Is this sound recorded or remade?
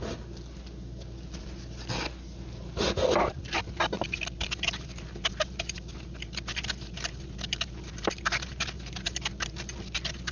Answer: recorded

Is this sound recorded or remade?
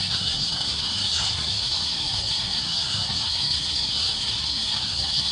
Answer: remade